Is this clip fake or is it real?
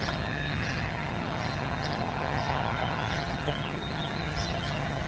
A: fake